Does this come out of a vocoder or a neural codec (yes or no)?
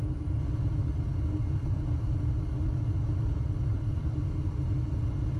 no